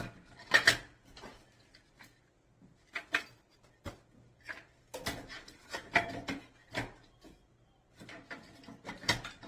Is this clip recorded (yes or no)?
yes